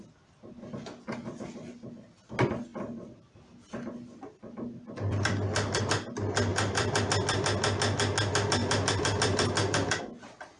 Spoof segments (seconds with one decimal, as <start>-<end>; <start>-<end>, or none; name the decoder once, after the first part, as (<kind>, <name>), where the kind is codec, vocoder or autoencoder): 2.7-5.8 (vocoder, BigVGAN v2); 6.5-7.0; 8.6-10.0